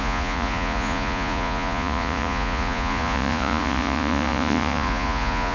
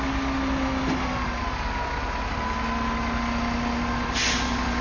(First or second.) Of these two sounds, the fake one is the first